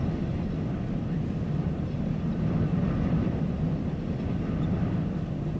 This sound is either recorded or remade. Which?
recorded